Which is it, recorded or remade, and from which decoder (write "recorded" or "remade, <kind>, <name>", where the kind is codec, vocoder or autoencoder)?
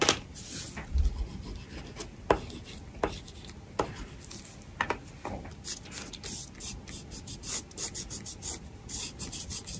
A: recorded